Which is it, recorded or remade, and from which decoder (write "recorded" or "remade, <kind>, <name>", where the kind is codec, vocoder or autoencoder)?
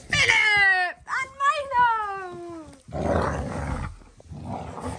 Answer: recorded